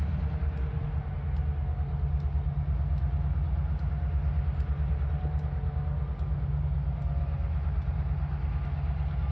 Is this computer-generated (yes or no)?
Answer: no